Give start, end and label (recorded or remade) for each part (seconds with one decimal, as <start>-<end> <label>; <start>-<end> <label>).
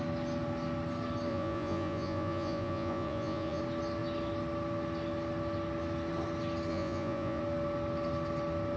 0.0-1.3 recorded; 1.3-3.6 remade; 3.6-6.7 recorded; 6.7-7.4 remade; 7.4-8.8 recorded